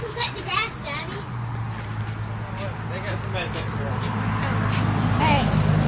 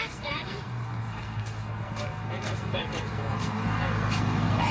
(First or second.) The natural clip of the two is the first